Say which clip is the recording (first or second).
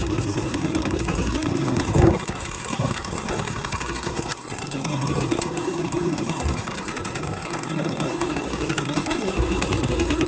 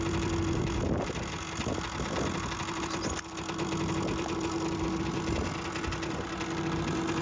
second